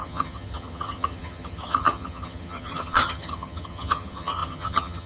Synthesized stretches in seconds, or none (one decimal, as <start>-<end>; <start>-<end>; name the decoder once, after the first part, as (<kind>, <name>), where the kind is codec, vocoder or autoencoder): 0.0-5.1 (vocoder, HiFi-GAN)